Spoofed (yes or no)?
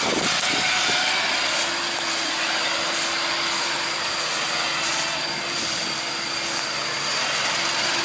no